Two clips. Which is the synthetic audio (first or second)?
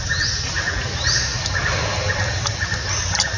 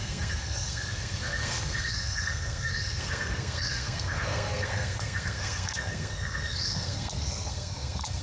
second